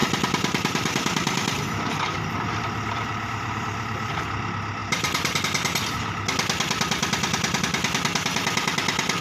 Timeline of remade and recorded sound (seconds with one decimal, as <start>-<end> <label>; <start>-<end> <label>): 0.0-4.1 remade; 4.1-4.8 recorded; 4.8-5.4 remade; 5.4-7.0 recorded; 7.0-7.6 remade; 7.6-9.2 recorded